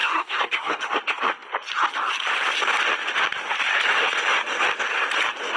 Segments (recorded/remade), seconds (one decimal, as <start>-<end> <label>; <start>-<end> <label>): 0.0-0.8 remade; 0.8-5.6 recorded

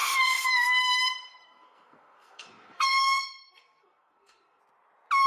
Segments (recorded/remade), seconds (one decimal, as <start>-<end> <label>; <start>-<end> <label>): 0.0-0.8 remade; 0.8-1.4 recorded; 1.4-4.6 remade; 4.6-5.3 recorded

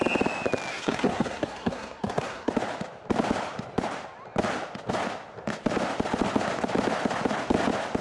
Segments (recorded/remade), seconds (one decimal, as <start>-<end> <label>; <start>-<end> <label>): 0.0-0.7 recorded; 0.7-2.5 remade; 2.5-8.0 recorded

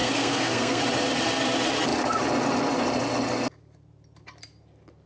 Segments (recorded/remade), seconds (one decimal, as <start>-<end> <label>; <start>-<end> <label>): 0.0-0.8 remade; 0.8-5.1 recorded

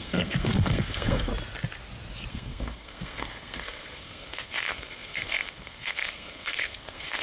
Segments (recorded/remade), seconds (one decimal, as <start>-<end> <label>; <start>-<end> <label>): 0.0-1.3 remade; 1.3-2.3 recorded; 2.3-7.2 remade

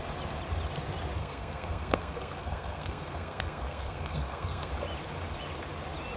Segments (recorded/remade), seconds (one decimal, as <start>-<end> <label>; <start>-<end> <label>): 0.0-1.2 recorded; 1.2-4.7 remade; 4.7-6.2 recorded

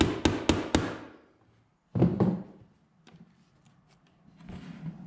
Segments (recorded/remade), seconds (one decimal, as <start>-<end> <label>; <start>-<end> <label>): 0.0-5.1 recorded

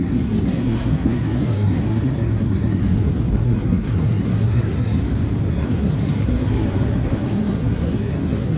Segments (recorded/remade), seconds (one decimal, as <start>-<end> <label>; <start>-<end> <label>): 0.0-5.0 remade; 5.0-5.5 recorded; 5.5-8.6 remade